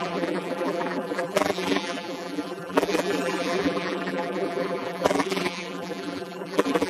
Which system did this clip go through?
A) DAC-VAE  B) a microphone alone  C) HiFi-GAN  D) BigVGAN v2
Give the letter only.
D